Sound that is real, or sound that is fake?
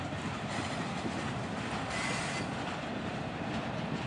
real